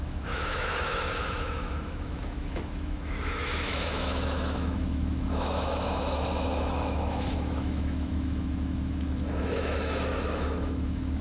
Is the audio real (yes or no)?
no